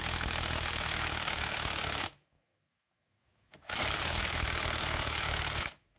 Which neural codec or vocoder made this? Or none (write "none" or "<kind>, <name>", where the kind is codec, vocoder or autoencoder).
autoencoder, DAC-VAE